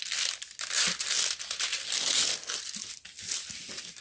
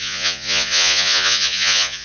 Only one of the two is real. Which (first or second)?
first